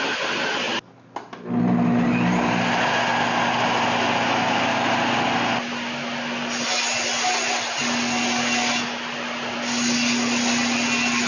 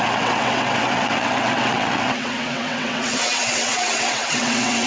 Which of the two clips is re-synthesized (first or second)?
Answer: second